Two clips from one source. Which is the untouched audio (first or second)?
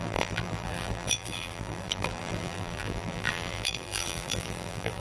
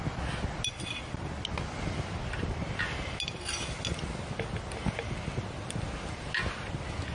second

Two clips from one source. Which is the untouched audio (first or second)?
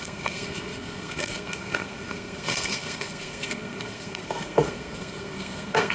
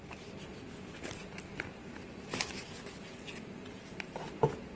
second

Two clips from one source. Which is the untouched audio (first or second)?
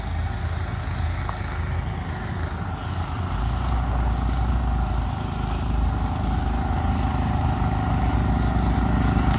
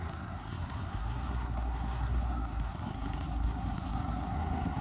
first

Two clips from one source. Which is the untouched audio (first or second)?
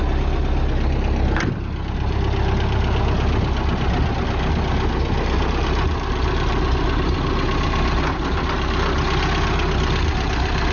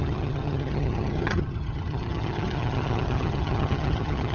first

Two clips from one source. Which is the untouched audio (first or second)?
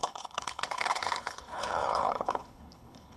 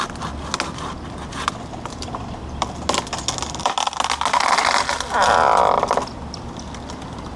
second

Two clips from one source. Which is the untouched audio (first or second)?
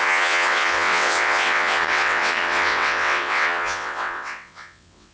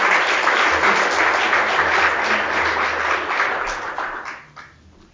second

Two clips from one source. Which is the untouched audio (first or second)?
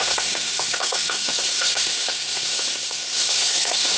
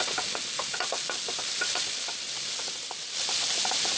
second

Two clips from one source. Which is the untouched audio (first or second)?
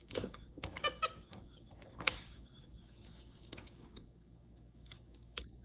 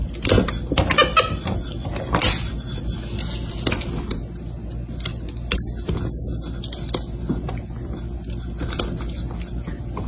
second